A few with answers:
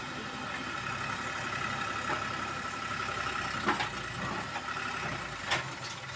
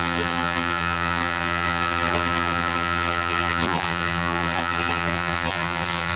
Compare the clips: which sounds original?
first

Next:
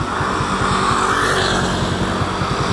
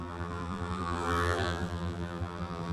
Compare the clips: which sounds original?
first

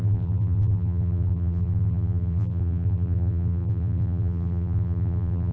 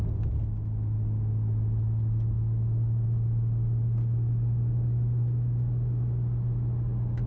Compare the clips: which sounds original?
second